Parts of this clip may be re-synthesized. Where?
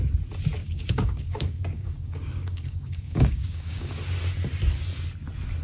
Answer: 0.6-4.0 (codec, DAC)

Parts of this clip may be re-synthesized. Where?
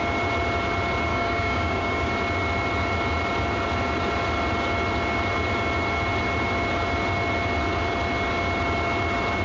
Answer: 1.1-2.1 (codec, DAC)